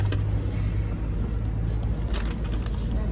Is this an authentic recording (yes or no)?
yes